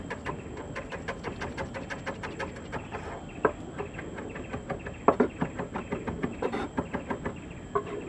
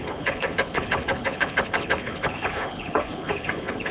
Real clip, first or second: first